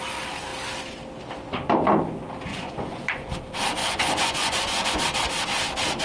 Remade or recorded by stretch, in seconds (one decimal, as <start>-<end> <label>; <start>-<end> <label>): 0.0-2.5 recorded; 2.5-3.3 remade; 3.3-3.8 recorded; 3.8-5.0 remade; 5.0-6.0 recorded